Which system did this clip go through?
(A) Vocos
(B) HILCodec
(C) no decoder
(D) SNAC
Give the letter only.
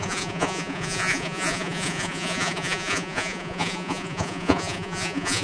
A